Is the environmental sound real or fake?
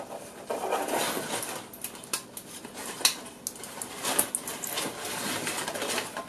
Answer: real